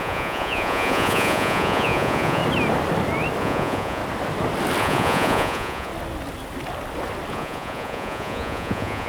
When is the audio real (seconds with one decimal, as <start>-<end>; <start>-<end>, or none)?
2.4-3.4; 4.0-4.8; 5.9-7.3